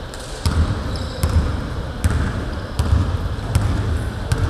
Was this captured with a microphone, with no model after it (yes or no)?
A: yes